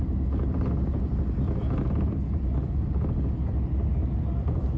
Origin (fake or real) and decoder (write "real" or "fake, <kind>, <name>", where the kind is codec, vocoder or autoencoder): real